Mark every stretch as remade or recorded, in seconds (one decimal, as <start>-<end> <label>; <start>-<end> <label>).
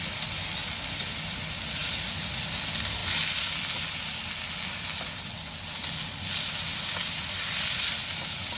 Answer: 0.0-8.6 recorded